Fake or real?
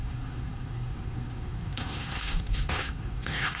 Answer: fake